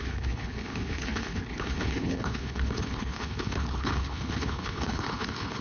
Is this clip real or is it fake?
fake